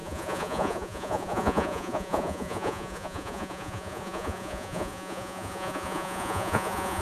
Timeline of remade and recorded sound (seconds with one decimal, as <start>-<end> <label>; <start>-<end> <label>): 0.0-7.0 remade

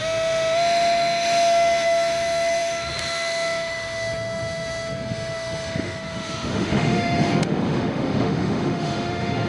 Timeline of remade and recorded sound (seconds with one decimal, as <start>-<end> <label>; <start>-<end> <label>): 0.0-9.5 remade

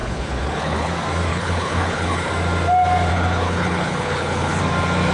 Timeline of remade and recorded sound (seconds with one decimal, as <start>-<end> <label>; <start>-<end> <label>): 0.0-0.9 remade; 0.9-1.3 recorded; 1.3-2.3 remade; 2.3-3.1 recorded; 3.1-4.6 remade; 4.6-5.1 recorded

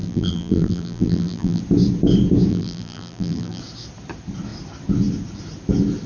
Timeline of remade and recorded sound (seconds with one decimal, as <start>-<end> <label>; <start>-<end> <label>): 0.0-1.6 remade; 1.6-2.5 recorded; 2.5-3.6 remade; 3.6-6.1 recorded

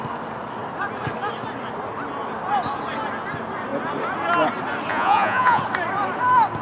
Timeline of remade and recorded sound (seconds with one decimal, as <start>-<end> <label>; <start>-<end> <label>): 0.0-4.9 recorded; 4.9-5.6 remade; 5.6-6.6 recorded

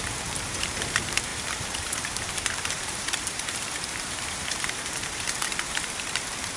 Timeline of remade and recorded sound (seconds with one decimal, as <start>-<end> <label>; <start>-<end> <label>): 0.0-6.6 remade

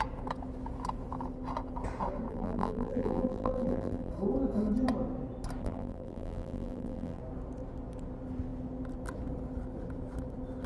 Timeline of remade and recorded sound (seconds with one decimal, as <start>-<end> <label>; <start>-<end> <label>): 0.0-2.3 recorded; 2.3-4.1 remade; 4.1-5.6 recorded; 5.6-7.2 remade; 7.2-10.7 recorded